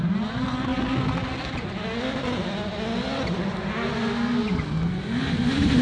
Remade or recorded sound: recorded